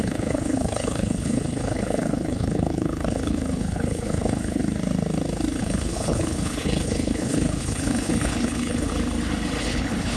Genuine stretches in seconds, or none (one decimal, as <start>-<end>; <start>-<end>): 4.6-5.6; 8.9-9.6